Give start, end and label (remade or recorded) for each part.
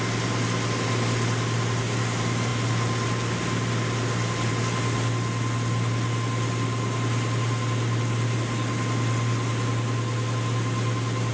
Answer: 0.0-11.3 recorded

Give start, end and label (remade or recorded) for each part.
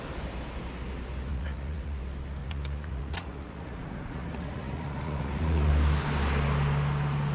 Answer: 0.0-1.3 recorded; 1.3-2.0 remade; 2.0-2.4 recorded; 2.4-5.7 remade; 5.7-7.3 recorded